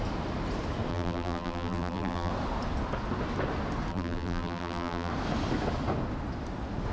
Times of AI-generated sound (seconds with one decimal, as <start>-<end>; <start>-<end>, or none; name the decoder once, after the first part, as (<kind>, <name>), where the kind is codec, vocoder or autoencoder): 0.9-2.3 (vocoder, BigVGAN v2); 3.9-5.1